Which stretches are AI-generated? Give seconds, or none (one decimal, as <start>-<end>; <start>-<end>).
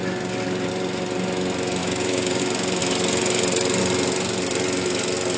1.8-2.4